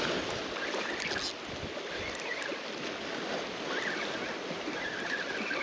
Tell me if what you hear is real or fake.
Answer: real